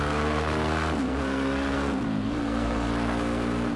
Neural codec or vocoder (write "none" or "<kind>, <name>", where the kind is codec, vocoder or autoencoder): codec, SNAC